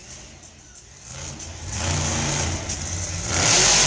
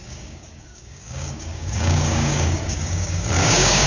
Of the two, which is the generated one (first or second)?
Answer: second